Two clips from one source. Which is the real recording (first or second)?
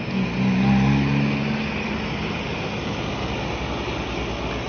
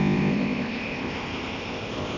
first